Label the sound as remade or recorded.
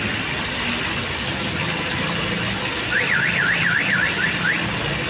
recorded